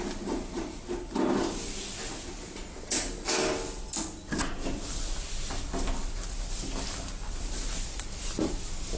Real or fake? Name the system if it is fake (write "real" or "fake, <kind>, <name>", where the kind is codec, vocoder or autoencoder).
real